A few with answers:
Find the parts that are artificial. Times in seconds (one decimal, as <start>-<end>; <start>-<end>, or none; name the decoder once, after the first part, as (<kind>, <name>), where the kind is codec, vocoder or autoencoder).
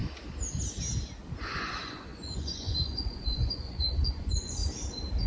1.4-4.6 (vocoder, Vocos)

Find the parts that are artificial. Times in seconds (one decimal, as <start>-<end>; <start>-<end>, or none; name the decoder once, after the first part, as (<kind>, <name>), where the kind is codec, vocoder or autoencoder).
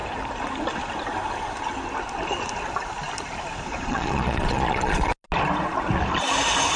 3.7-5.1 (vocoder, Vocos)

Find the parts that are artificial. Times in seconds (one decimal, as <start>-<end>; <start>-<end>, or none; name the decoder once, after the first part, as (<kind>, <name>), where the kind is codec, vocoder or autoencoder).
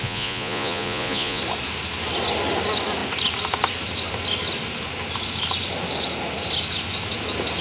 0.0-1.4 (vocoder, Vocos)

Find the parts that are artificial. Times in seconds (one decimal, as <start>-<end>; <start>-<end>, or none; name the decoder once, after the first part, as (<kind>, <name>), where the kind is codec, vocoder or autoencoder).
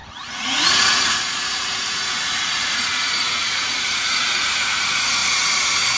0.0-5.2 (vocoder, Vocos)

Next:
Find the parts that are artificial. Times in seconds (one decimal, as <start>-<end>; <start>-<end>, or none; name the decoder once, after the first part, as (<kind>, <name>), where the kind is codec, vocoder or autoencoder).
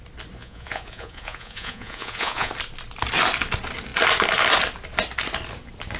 0.4-2.5 (vocoder, Vocos)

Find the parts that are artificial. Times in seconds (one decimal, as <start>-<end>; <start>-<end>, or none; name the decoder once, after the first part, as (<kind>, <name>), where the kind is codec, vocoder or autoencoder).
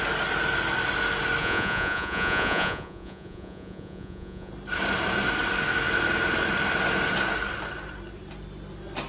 1.4-4.5 (vocoder, Vocos)